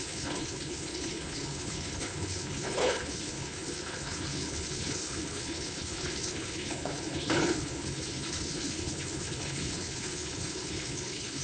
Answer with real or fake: fake